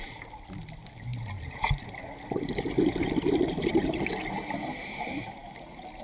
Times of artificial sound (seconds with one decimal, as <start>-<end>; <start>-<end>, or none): none